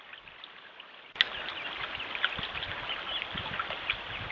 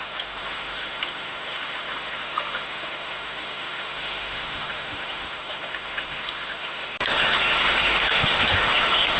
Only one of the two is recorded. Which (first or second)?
first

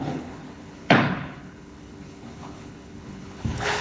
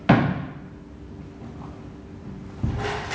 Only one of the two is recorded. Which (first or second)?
second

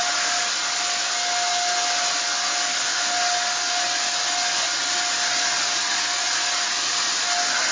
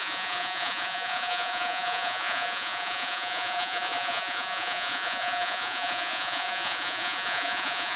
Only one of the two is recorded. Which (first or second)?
first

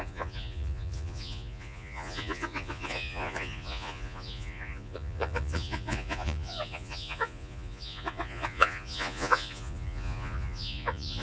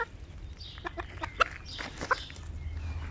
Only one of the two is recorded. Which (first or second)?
second